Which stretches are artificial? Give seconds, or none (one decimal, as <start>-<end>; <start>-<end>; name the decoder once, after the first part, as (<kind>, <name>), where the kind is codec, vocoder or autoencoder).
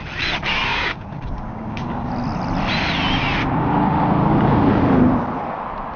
0.7-2.1 (codec, DAC); 3.4-4.0